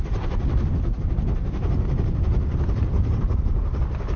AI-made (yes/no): no